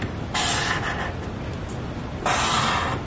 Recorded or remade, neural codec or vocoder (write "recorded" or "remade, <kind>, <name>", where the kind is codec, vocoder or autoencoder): recorded